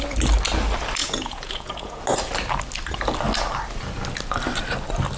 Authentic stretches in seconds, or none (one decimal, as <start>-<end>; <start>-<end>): 0.0-1.0; 2.0-5.2